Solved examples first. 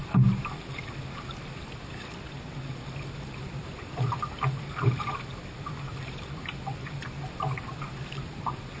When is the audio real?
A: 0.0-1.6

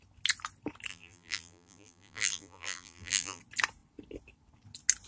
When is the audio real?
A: 0.0-0.9; 3.4-5.1

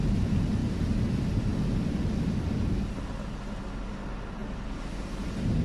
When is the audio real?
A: 0.0-4.4

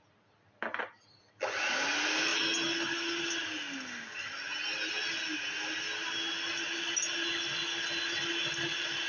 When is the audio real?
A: 0.0-9.1